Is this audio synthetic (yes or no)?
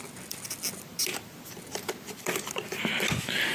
no